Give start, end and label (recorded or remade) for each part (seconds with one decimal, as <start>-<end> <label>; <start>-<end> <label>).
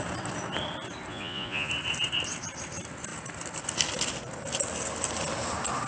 0.0-1.1 recorded; 1.1-1.7 remade; 1.7-5.9 recorded